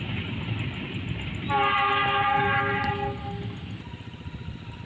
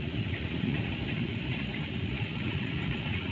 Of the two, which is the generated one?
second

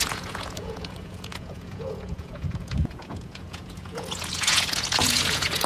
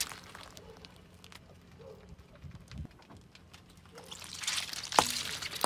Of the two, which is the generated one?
first